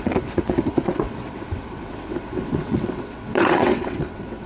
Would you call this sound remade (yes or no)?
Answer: yes